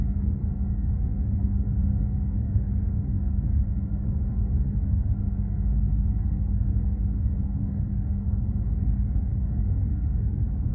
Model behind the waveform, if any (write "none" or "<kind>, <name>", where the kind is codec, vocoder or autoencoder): codec, SNAC